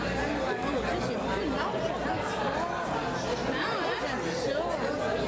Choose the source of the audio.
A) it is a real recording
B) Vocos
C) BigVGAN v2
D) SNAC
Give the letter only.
A